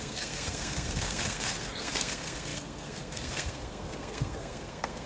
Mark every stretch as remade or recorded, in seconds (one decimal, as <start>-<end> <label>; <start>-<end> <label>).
0.0-5.1 remade